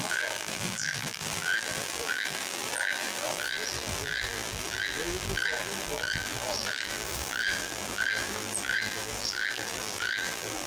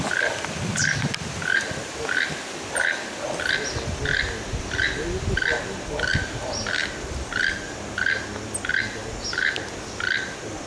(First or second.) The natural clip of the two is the second